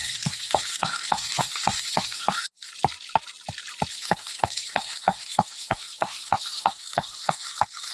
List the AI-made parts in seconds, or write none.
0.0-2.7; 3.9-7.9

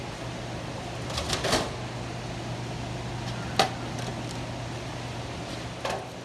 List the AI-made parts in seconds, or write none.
none

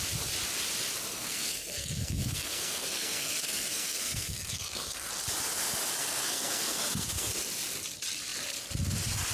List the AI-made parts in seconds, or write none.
1.1-5.1; 6.0-7.3